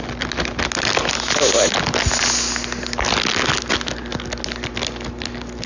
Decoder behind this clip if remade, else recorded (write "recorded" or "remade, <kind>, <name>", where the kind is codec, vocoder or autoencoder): recorded